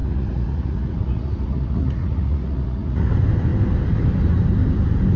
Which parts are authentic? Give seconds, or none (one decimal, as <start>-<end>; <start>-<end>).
3.1-5.2